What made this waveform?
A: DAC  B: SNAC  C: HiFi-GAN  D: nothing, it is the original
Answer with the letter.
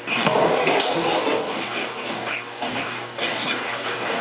A